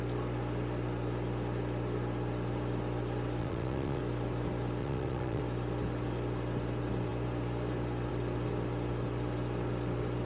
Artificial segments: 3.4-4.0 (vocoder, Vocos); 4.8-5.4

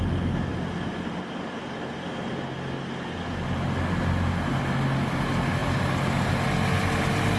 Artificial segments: none

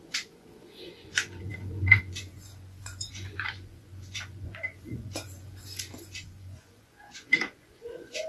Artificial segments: 0.0-8.3 (vocoder, Vocos)